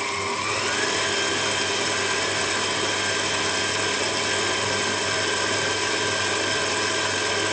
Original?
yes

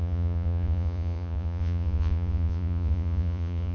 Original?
no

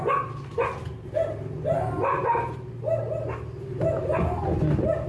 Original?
yes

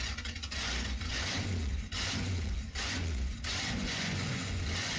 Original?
no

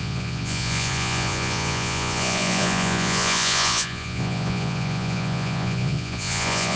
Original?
no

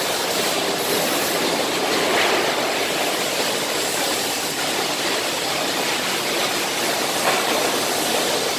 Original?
yes